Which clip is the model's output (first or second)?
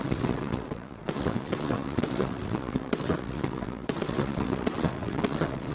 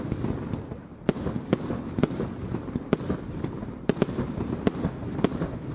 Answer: first